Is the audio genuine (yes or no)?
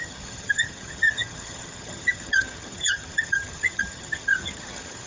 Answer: no